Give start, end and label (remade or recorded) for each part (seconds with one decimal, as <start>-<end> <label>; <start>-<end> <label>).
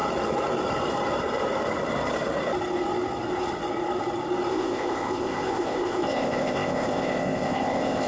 0.0-4.5 recorded; 4.5-8.1 remade